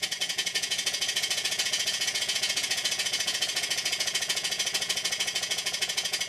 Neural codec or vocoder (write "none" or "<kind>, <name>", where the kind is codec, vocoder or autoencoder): vocoder, Vocos